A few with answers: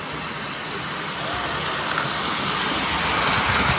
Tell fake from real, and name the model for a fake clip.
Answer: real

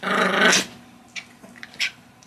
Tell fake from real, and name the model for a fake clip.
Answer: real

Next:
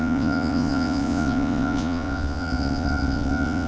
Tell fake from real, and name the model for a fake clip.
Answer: fake, vocoder, Vocos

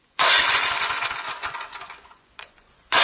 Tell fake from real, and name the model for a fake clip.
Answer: fake, vocoder, Vocos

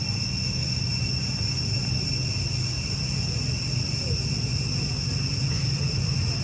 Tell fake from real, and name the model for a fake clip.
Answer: real